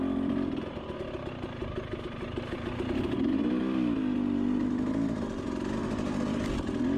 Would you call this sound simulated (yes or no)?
no